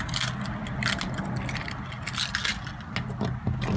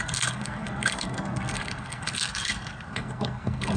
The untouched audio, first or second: first